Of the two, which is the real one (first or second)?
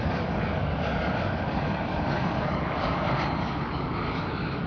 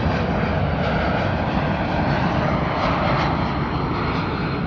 second